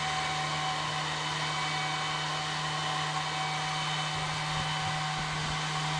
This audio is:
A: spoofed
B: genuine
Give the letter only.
B